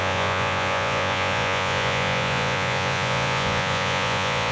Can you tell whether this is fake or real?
fake